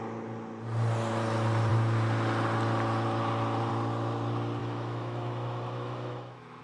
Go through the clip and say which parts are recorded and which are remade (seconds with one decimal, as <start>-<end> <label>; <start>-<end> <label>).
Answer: 0.0-4.6 recorded; 4.6-6.6 remade